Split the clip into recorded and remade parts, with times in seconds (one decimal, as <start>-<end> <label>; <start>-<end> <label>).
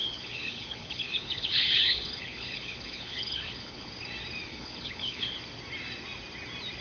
0.0-3.9 remade; 3.9-4.5 recorded; 4.5-5.4 remade; 5.4-6.8 recorded